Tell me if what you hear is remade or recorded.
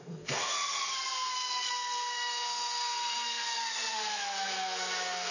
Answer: remade